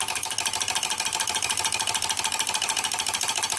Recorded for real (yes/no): no